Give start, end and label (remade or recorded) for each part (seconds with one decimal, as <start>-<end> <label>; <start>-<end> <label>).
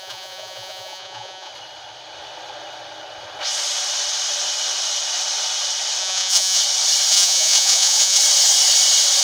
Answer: 0.0-1.5 remade; 1.5-6.0 recorded; 6.0-6.6 remade; 6.6-7.1 recorded; 7.1-8.2 remade; 8.2-9.2 recorded